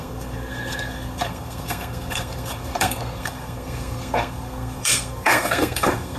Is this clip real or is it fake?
fake